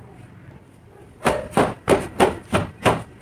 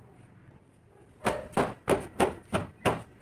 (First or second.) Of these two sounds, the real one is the second